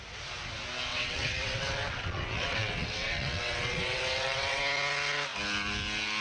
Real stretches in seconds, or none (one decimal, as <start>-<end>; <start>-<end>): 0.0-0.9; 4.6-6.2